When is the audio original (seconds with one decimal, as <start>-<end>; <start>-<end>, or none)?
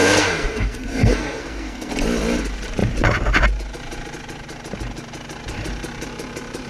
1.9-6.7